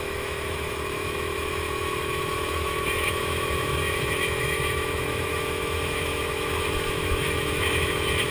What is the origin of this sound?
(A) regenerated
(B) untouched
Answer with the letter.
A